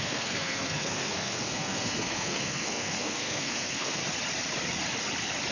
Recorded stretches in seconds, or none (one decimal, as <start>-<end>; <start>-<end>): 4.0-5.5

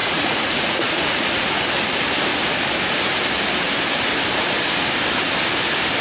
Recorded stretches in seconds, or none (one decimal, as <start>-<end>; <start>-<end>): 1.6-6.0

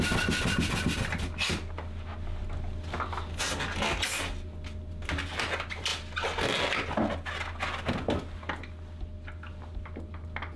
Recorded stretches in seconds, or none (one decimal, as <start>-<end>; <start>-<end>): 0.0-10.6

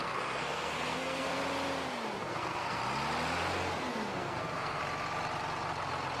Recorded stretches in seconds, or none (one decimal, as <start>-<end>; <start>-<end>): 1.4-2.2; 2.8-3.9; 4.8-6.2

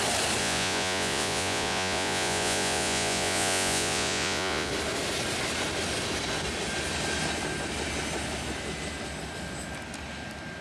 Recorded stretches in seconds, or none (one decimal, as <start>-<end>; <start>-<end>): 0.0-0.4; 4.7-10.6